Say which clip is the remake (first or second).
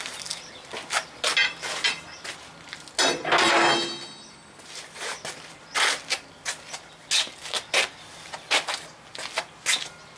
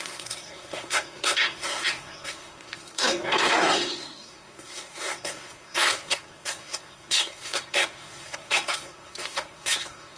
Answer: second